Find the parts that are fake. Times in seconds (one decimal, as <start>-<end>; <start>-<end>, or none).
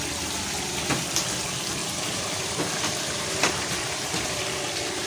1.8-4.4